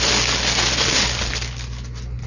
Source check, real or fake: real